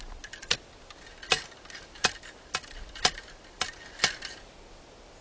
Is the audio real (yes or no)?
yes